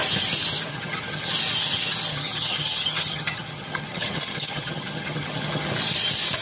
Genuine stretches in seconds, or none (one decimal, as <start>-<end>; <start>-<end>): 0.0-0.7; 1.3-2.1; 5.7-6.4